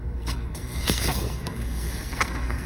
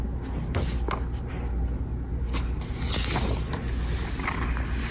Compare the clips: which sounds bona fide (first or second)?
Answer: second